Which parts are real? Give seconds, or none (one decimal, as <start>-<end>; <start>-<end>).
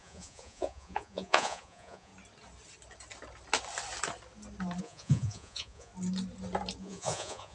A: 2.1-4.8; 5.9-6.8